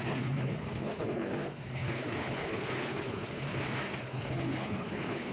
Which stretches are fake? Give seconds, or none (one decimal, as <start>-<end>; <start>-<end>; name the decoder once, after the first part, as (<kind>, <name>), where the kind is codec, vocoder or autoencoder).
0.0-3.5 (codec, HILCodec); 4.0-5.3